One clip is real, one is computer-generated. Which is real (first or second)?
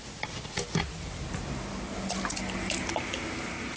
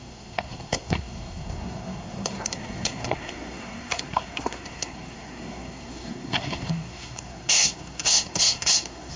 first